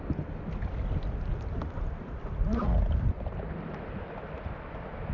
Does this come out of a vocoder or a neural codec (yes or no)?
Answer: no